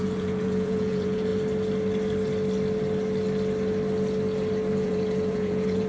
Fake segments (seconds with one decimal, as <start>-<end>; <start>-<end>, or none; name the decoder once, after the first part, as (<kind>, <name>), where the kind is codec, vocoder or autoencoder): 0.0-1.3 (vocoder, Vocos); 4.8-5.9